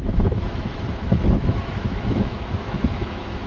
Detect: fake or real fake